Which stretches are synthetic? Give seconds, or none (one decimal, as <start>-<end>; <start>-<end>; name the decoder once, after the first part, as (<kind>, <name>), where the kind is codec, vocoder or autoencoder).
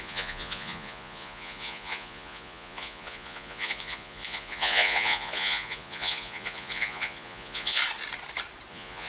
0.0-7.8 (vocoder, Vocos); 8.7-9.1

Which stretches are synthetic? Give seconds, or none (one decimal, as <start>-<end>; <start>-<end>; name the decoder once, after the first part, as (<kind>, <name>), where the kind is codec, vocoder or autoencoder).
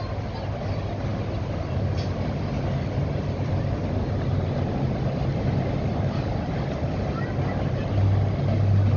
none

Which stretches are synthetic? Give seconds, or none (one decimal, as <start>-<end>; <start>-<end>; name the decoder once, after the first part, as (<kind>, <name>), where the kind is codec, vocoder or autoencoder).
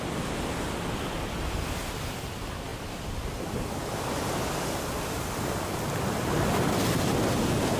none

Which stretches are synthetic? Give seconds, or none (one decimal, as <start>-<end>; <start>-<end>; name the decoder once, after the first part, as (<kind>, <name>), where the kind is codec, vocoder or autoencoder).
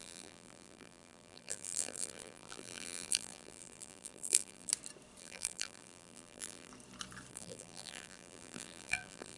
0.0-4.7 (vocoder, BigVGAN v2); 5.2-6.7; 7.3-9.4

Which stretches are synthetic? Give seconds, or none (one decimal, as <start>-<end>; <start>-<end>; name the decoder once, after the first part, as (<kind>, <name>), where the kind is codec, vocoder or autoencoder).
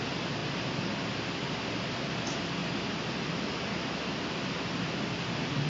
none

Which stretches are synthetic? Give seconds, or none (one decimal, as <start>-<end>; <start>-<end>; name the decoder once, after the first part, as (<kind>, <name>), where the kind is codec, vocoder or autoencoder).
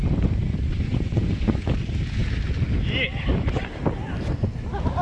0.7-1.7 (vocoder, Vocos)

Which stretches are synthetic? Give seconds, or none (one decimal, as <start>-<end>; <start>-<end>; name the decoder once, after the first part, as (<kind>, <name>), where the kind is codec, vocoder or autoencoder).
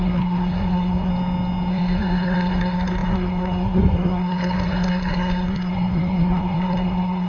0.0-1.1 (codec, SNAC); 1.7-7.3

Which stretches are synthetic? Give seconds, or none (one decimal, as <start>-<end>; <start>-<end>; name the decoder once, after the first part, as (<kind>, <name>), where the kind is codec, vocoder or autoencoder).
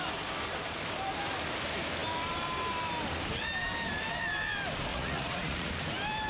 4.9-5.7 (vocoder, Vocos)